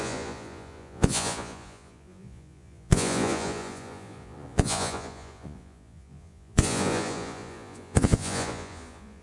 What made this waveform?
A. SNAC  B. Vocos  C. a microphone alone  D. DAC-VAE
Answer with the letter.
B